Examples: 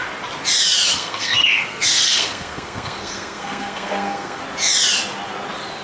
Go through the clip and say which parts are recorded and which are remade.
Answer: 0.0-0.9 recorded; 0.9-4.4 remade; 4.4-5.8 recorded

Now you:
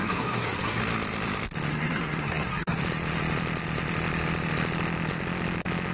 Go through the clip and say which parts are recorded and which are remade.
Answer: 0.0-0.8 remade; 0.8-1.7 recorded; 1.7-2.8 remade; 2.8-5.9 recorded

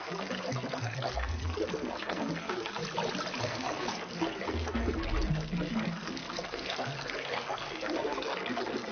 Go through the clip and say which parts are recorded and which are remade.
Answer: 0.0-2.8 remade; 2.8-3.4 recorded; 3.4-8.9 remade

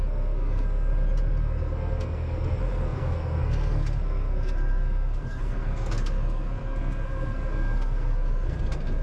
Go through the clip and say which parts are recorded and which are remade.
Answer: 0.0-0.9 remade; 0.9-1.4 recorded; 1.4-9.0 remade

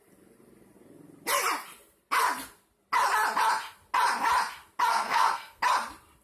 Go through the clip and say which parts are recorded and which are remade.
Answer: 0.0-4.9 recorded; 4.9-5.6 remade; 5.6-6.2 recorded

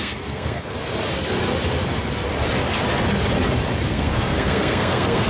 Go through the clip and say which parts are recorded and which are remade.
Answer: 0.0-0.7 remade; 0.7-3.9 recorded; 3.9-5.3 remade

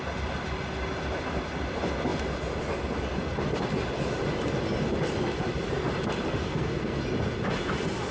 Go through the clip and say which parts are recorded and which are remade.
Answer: 0.0-6.4 recorded; 6.4-7.0 remade; 7.0-8.1 recorded